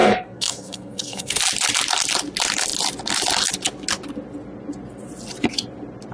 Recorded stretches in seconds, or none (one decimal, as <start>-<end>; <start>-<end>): 1.4-6.1